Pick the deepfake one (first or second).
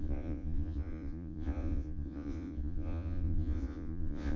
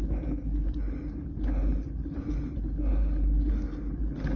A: first